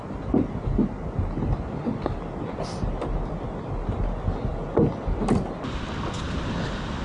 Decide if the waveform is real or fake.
real